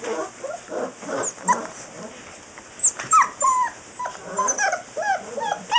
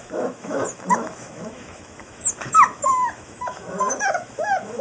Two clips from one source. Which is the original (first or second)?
first